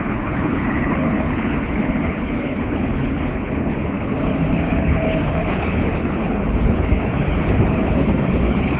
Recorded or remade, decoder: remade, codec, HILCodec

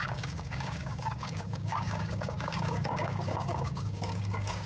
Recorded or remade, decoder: remade, codec, DAC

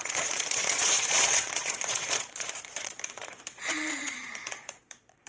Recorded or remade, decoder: remade, vocoder, Vocos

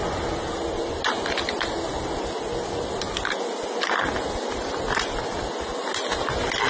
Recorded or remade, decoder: recorded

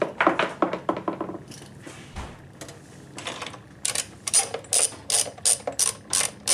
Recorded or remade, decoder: recorded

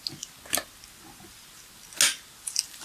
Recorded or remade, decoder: recorded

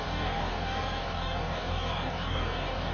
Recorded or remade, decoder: remade, codec, DAC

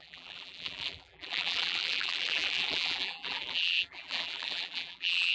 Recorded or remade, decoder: remade, vocoder, BigVGAN v2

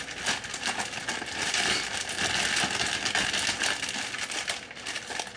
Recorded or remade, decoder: recorded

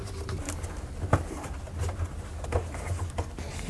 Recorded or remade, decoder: recorded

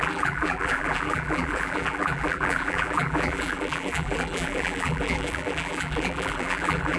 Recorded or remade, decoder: remade, vocoder, BigVGAN v2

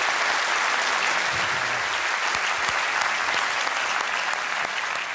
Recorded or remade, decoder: recorded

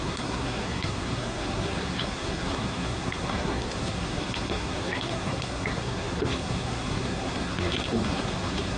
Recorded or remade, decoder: remade, codec, SNAC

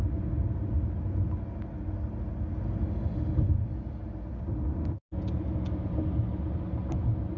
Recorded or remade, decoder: recorded